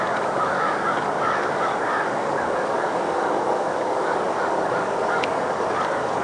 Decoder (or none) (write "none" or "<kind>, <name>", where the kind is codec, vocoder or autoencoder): codec, DAC